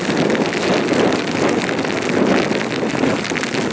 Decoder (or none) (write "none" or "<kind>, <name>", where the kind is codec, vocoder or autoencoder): none